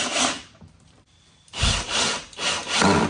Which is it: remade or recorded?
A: recorded